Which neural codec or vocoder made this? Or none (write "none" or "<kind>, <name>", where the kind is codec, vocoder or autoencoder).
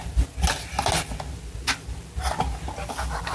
none